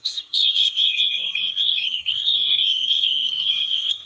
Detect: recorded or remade remade